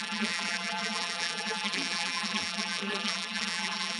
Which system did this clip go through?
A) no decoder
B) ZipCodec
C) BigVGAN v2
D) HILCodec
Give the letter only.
C